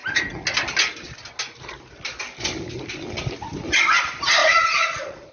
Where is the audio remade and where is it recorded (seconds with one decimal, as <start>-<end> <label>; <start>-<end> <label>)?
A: 0.0-4.4 recorded; 4.4-5.3 remade